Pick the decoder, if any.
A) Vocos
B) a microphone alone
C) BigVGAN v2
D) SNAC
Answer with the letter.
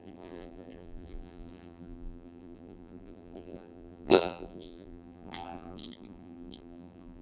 C